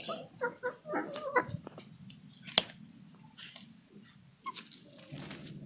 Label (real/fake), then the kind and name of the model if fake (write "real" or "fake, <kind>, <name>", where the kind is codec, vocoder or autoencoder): real